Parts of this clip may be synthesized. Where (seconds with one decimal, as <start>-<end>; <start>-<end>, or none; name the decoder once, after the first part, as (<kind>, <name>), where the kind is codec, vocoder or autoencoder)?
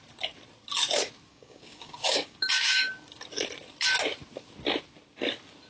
1.3-2.9 (codec, DAC)